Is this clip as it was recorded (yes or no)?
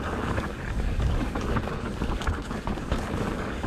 no